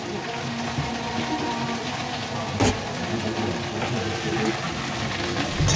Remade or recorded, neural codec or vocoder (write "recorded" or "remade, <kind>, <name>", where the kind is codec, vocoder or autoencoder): recorded